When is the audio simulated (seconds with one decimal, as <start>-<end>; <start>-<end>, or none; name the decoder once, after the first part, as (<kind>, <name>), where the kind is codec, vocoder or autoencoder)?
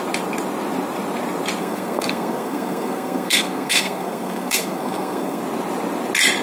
1.6-5.4 (codec, SNAC)